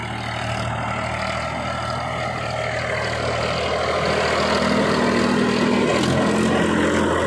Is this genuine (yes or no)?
yes